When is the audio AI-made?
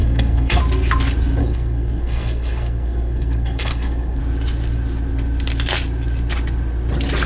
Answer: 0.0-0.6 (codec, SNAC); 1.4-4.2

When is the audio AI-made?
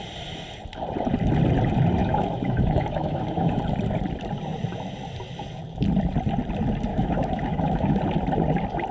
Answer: 2.0-3.6 (autoencoder, DAC-VAE); 6.9-8.0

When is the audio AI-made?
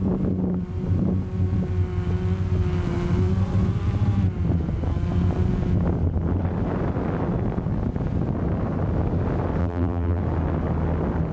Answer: 9.6-10.2 (vocoder, BigVGAN v2)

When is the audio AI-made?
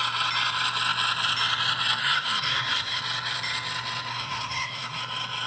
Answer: 2.0-3.0 (codec, SNAC); 4.1-5.0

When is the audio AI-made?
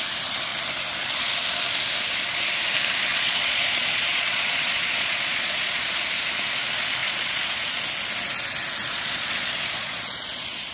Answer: 3.1-5.9 (vocoder, Vocos); 7.0-7.8; 8.8-10.7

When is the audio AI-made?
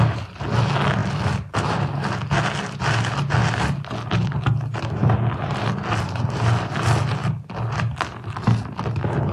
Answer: 1.0-1.9 (vocoder, BigVGAN v2); 7.2-8.6